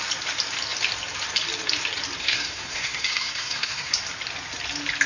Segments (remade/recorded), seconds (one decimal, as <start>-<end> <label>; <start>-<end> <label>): 0.0-2.2 recorded; 2.2-3.9 remade; 3.9-5.1 recorded